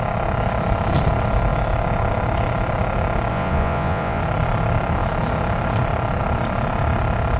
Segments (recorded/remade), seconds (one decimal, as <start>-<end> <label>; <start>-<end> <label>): 0.0-3.3 recorded; 3.3-4.2 remade; 4.2-7.4 recorded